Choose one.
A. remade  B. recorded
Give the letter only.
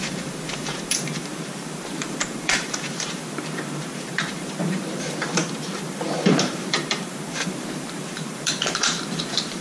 A